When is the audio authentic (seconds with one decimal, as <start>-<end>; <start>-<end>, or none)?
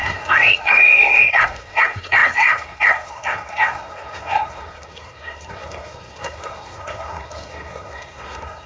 none